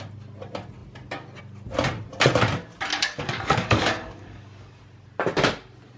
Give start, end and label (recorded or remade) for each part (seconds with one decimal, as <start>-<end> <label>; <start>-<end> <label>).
0.0-2.9 recorded; 2.9-4.8 remade; 4.8-6.0 recorded